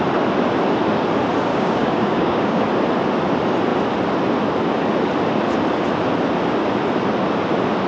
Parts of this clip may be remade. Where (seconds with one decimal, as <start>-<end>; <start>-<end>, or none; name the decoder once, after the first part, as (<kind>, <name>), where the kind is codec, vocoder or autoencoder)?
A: 1.5-2.6 (codec, DAC)